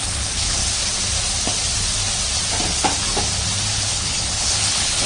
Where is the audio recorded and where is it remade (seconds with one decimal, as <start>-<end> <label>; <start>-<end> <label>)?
0.0-0.6 remade; 0.6-3.7 recorded; 3.7-5.1 remade